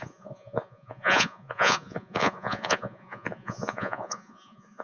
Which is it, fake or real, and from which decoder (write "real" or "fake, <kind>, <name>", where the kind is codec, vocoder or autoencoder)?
fake, vocoder, Vocos